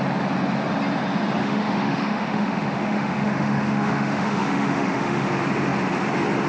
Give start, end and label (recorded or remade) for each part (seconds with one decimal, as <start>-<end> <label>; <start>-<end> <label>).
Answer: 0.0-1.4 recorded; 1.4-5.3 remade; 5.3-6.5 recorded